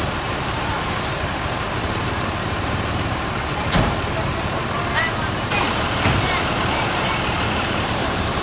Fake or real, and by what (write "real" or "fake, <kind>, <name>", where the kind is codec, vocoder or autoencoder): fake, vocoder, BigVGAN v2